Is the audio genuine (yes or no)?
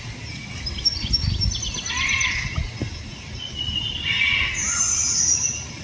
yes